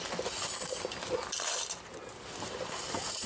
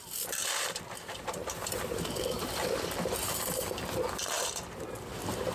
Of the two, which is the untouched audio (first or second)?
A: first